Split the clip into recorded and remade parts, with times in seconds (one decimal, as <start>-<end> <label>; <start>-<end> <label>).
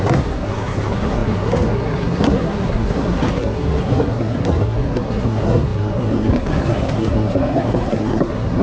0.0-8.6 remade